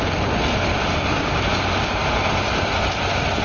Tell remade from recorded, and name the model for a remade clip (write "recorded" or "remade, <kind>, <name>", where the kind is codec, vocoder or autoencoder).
recorded